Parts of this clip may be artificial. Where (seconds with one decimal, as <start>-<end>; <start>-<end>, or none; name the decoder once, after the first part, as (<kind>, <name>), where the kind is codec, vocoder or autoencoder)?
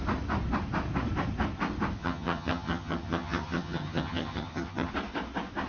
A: 2.0-4.9 (vocoder, HiFi-GAN)